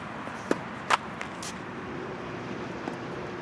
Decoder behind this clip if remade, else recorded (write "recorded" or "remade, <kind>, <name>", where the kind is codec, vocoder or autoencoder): recorded